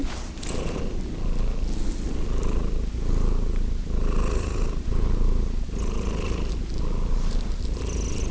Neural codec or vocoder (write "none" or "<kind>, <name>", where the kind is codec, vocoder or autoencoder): none